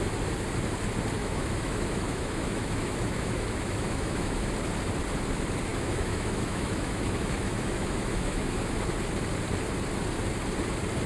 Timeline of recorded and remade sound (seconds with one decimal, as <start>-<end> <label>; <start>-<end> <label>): 0.0-1.2 recorded; 1.2-4.5 remade; 4.5-5.7 recorded; 5.7-8.8 remade; 8.8-11.1 recorded